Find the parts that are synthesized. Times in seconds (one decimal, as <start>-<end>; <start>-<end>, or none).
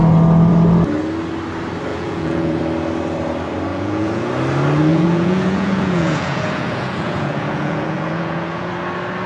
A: 1.9-2.6; 3.7-4.3; 4.9-8.7